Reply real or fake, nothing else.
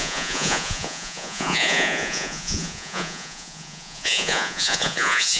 fake